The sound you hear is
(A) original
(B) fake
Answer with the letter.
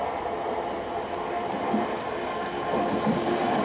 A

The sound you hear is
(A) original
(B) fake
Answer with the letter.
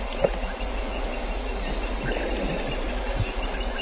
A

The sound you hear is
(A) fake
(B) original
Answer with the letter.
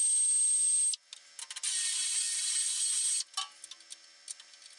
B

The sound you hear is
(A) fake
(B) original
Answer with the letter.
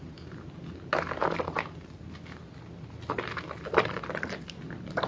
B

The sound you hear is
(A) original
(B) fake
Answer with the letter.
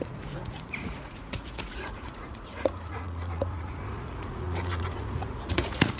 B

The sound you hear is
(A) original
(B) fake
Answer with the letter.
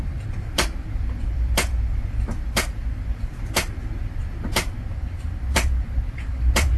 B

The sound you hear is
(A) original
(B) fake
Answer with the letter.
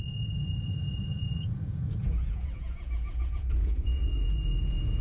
B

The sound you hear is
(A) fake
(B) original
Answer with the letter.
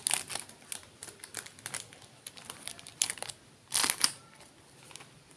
B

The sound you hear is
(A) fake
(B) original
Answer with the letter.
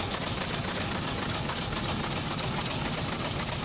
B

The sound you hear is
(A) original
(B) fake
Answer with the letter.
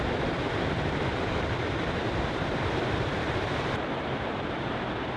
B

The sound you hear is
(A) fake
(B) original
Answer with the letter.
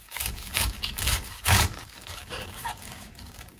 A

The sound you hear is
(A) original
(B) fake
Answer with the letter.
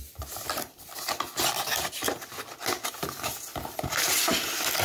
A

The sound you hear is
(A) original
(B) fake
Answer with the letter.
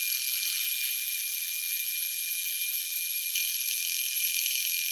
B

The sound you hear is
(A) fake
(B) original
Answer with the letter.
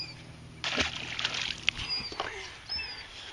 B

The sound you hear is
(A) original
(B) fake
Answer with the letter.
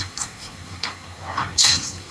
B